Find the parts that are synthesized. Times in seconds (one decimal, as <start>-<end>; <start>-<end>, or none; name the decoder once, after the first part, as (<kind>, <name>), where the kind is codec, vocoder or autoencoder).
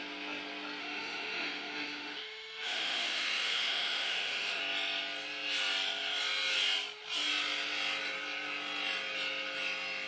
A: 0.8-4.6 (autoencoder, DAC-VAE)